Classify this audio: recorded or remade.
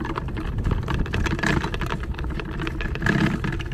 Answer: recorded